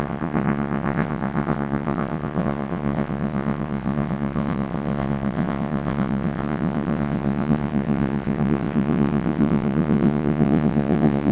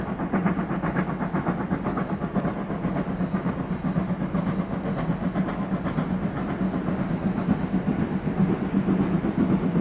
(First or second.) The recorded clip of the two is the second